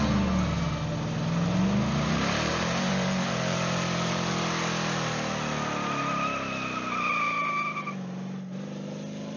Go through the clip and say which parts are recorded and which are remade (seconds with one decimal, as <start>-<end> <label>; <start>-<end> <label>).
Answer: 0.0-2.5 recorded; 2.5-4.3 remade; 4.3-9.4 recorded